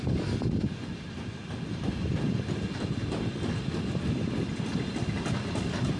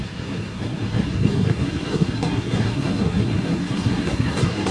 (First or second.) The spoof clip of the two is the second